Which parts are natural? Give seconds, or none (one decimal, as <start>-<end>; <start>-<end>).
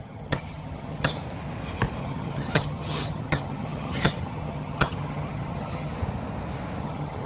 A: 1.2-2.0; 5.9-6.8